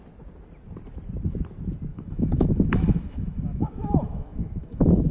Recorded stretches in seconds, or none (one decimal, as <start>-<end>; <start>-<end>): 0.0-1.9